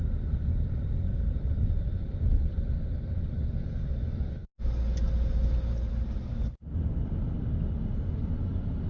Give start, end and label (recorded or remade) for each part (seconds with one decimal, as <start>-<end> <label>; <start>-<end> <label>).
0.0-1.1 recorded; 1.1-1.6 remade; 1.6-8.9 recorded

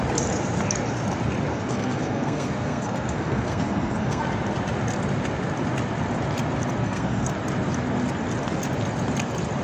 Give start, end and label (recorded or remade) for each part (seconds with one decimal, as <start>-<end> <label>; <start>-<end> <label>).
0.0-1.5 recorded; 1.5-4.2 remade; 4.2-6.8 recorded; 6.8-7.3 remade; 7.3-9.6 recorded

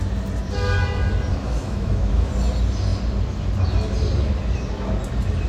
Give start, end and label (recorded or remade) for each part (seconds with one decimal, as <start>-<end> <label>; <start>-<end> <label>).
0.0-1.3 recorded; 1.3-2.3 remade; 2.3-5.5 recorded

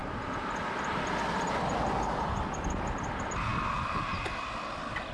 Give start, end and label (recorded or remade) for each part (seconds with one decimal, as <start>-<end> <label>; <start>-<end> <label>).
0.0-5.1 recorded

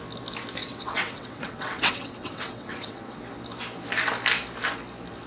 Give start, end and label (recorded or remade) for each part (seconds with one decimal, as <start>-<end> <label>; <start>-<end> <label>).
0.0-0.6 recorded; 0.6-3.2 remade; 3.2-5.3 recorded

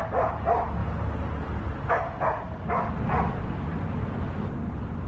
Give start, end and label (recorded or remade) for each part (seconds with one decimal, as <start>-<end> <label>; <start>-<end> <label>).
0.0-5.1 recorded

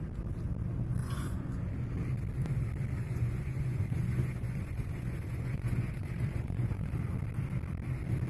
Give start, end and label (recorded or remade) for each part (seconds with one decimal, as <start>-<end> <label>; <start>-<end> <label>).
0.0-1.0 recorded; 1.0-1.6 remade; 1.6-3.0 recorded; 3.0-6.9 remade; 6.9-8.3 recorded